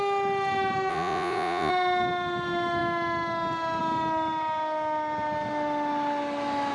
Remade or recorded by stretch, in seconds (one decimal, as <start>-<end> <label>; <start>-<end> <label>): 0.0-0.9 recorded; 0.9-1.7 remade; 1.7-6.7 recorded